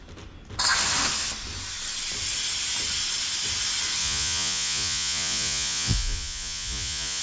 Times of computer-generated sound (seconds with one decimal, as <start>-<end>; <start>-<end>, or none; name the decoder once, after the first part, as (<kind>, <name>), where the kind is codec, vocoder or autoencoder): 4.0-7.2 (vocoder, Vocos)